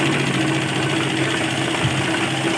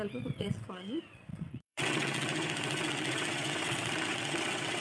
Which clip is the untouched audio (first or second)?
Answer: first